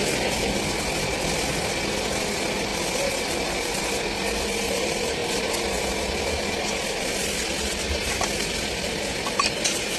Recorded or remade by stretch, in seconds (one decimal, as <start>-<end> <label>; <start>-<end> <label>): 0.0-10.0 recorded